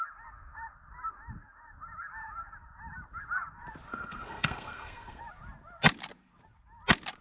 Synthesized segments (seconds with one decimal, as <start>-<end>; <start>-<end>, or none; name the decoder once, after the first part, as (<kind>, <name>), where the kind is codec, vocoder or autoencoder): 3.9-5.2 (codec, SNAC)